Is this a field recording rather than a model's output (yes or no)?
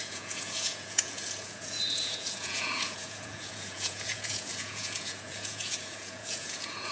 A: no